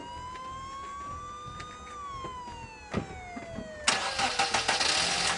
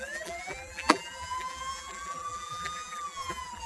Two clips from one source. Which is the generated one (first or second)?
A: second